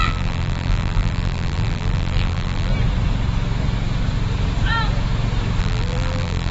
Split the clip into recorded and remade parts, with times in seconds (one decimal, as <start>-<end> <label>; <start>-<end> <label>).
0.0-2.7 remade; 2.7-5.6 recorded; 5.6-6.5 remade